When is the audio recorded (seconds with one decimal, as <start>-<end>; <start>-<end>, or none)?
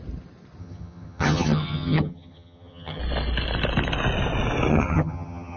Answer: 0.0-0.6; 3.0-4.7